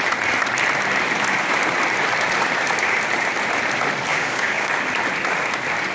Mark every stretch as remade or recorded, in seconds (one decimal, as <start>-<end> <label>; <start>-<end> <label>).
0.0-4.1 recorded; 4.1-4.7 remade; 4.7-5.9 recorded